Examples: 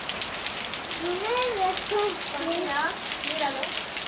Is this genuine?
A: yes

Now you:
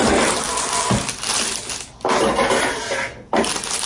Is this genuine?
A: yes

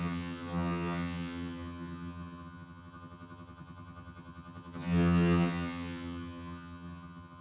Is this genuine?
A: no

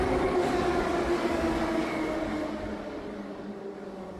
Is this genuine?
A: no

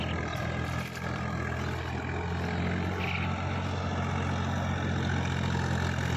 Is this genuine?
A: yes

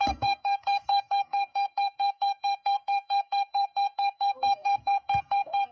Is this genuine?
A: no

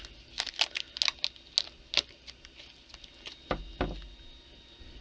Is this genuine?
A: yes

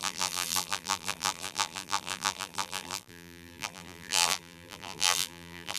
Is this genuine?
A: no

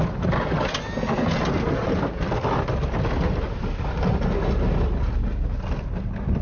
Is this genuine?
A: yes